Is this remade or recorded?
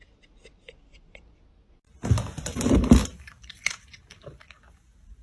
recorded